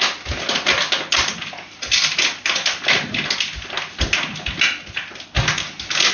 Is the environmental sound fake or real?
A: real